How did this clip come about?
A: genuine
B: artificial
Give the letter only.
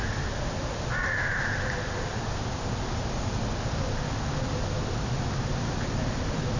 A